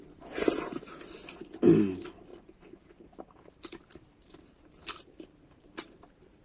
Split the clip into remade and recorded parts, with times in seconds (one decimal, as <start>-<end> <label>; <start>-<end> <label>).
0.0-2.3 recorded; 2.3-6.4 remade